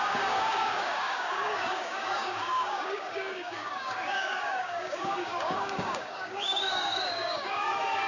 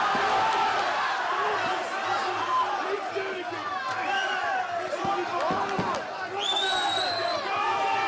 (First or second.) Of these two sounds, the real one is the second